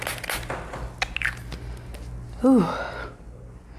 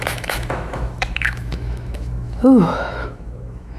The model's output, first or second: second